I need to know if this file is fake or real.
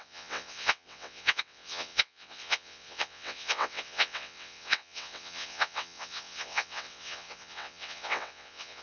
fake